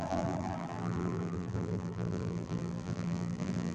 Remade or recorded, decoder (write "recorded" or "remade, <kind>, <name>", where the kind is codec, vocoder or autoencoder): remade, vocoder, BigVGAN v2